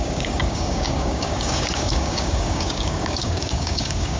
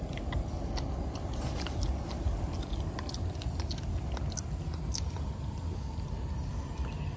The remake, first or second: first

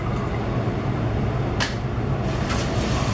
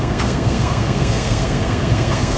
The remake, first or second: second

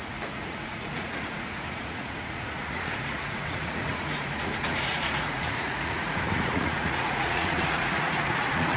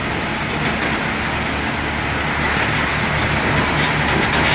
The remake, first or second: first